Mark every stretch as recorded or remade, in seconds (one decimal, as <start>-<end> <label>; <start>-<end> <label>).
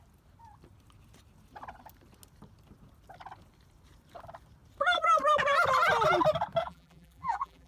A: 0.0-6.6 recorded; 6.6-7.7 remade